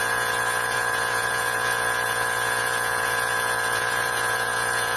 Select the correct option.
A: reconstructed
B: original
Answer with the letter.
A